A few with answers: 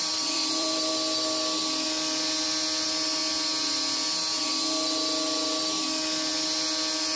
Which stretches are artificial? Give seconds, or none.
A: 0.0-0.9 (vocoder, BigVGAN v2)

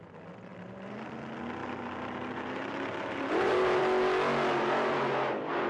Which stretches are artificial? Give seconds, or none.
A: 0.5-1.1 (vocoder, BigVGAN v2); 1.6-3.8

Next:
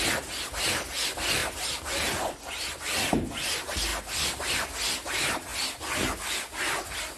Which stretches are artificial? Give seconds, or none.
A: none

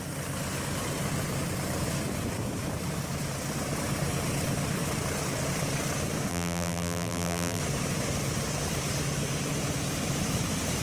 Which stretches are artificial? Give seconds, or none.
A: 6.3-7.6 (vocoder, BigVGAN v2)